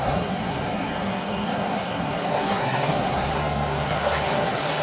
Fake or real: fake